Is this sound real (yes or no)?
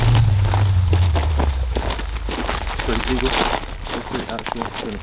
yes